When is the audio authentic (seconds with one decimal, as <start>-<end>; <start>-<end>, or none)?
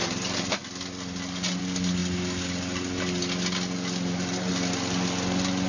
0.0-5.7